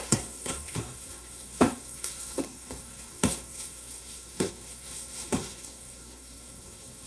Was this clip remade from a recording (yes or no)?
yes